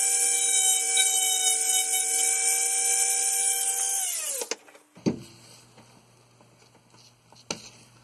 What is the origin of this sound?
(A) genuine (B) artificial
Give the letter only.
A